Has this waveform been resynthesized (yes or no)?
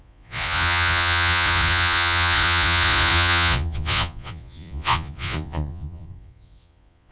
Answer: yes